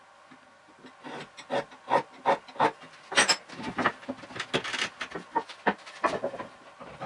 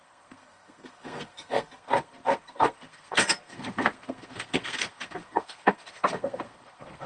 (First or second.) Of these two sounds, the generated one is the second